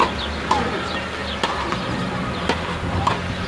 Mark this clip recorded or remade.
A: recorded